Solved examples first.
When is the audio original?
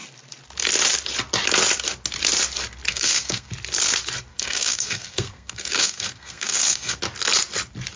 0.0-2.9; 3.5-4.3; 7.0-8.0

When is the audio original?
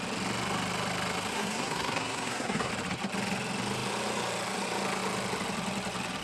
0.0-1.3; 2.7-6.2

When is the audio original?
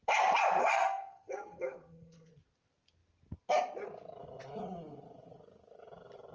0.0-0.6; 2.3-6.3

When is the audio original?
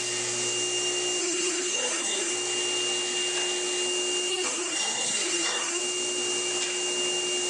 0.0-1.2; 2.3-4.3; 5.8-7.5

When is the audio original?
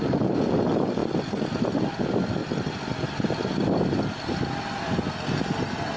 0.0-6.0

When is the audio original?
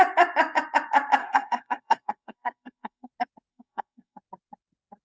0.0-1.2; 3.1-3.5; 4.2-5.0